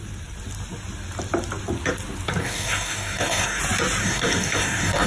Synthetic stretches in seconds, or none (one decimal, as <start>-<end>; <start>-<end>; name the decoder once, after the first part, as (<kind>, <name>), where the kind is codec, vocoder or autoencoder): 2.4-3.6 (codec, DAC); 4.0-5.1